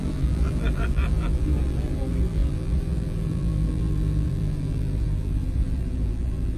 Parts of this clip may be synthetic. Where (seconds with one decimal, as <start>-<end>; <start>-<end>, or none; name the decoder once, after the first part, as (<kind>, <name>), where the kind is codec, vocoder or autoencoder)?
0.0-6.6 (vocoder, BigVGAN v2)